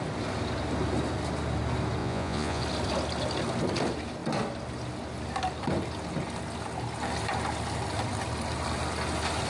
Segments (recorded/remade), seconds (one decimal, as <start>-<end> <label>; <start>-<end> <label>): 0.0-2.0 recorded; 2.0-2.6 remade; 2.6-9.5 recorded